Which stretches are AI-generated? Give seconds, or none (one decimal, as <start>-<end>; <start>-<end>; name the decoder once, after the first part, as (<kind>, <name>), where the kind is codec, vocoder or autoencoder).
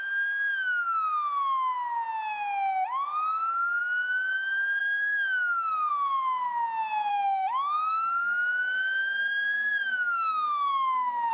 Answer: 4.8-5.9 (autoencoder, DAC-VAE); 7.1-11.3